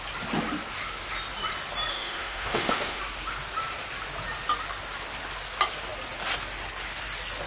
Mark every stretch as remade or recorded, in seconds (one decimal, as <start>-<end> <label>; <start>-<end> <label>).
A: 0.0-1.9 recorded; 1.9-3.0 remade; 3.0-7.5 recorded

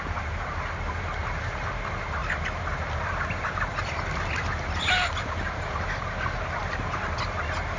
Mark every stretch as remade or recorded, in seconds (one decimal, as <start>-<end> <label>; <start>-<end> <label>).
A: 0.0-7.8 recorded

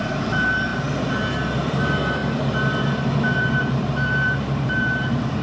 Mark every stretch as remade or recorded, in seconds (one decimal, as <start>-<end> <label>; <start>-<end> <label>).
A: 0.0-0.7 remade; 0.7-1.7 recorded; 1.7-2.2 remade; 2.2-3.2 recorded; 3.2-5.4 remade

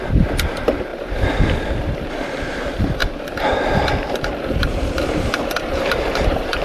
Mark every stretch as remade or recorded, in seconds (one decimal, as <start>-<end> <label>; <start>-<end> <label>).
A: 0.0-3.0 remade; 3.0-4.4 recorded; 4.4-6.6 remade

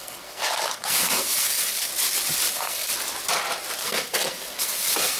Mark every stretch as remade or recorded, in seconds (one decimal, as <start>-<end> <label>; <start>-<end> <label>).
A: 0.0-1.9 remade; 1.9-2.5 recorded; 2.5-2.9 remade; 2.9-3.8 recorded; 3.8-5.2 remade

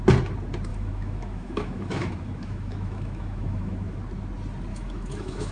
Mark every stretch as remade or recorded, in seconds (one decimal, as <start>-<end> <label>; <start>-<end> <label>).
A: 0.0-0.7 recorded; 0.7-4.0 remade; 4.0-4.7 recorded; 4.7-5.5 remade

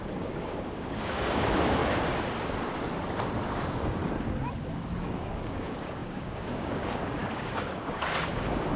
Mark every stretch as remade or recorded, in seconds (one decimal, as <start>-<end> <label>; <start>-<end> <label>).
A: 0.0-1.8 remade; 1.8-3.5 recorded; 3.5-4.0 remade; 4.0-4.7 recorded; 4.7-8.8 remade